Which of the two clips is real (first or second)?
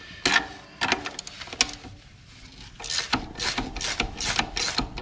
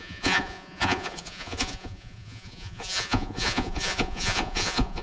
first